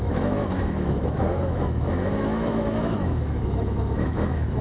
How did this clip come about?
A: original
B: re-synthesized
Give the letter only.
B